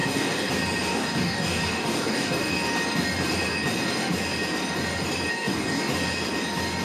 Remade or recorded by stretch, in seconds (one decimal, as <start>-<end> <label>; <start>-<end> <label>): 0.0-0.5 remade; 0.5-0.9 recorded; 0.9-2.5 remade; 2.5-5.3 recorded; 5.3-5.8 remade; 5.8-6.8 recorded